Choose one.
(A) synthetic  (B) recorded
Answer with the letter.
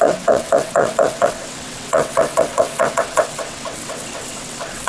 A